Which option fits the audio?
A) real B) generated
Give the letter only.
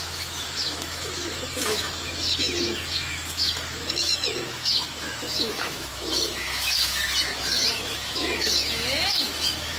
B